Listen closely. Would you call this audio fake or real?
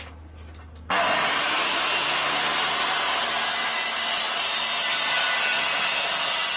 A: real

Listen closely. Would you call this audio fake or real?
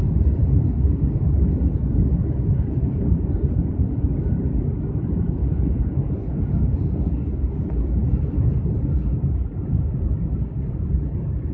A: real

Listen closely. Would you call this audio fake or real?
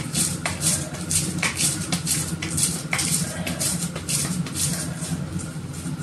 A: fake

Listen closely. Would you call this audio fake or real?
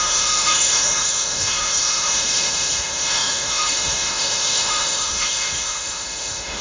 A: fake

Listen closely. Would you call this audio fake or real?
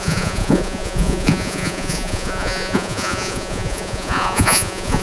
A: fake